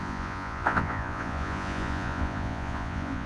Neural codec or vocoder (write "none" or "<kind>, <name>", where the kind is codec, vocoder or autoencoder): vocoder, Vocos